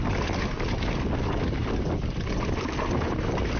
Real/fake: real